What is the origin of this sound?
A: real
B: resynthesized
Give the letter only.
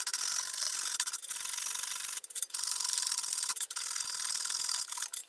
A